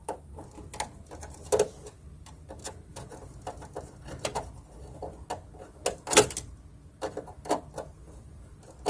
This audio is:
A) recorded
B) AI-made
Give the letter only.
A